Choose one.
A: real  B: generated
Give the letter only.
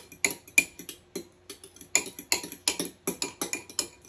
A